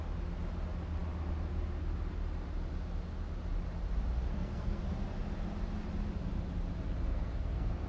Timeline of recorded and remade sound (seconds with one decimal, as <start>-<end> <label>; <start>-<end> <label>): 0.0-4.3 recorded; 4.3-4.8 remade; 4.8-7.1 recorded; 7.1-7.9 remade